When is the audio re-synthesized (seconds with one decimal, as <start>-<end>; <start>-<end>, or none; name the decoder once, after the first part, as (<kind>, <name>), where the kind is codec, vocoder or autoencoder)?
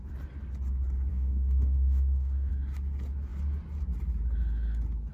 1.1-2.5 (codec, DAC)